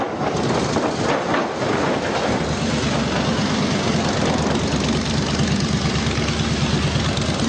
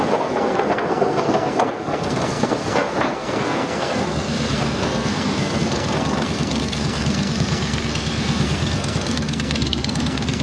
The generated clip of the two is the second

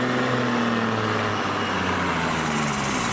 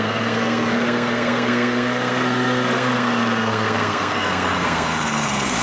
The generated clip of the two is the second